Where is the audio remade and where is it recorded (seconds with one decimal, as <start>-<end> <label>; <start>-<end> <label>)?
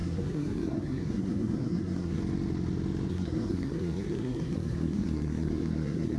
0.0-2.2 remade; 2.2-3.1 recorded; 3.1-6.2 remade